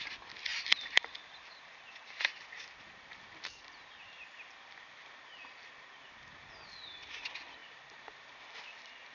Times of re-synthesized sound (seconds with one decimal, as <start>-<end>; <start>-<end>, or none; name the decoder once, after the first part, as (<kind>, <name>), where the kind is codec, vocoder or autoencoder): 0.5-1.4 (vocoder, BigVGAN v2); 7.6-8.3